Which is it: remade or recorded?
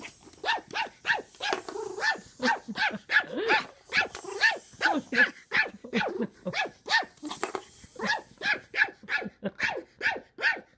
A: recorded